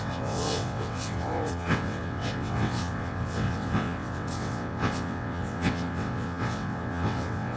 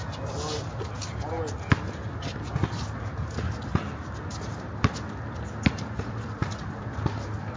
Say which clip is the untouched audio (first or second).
second